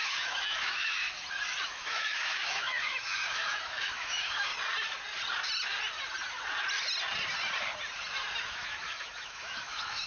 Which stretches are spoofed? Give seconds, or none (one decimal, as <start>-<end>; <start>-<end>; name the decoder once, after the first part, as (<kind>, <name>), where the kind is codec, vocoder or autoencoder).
0.0-1.0 (autoencoder, DAC-VAE); 1.6-4.5; 8.4-10.1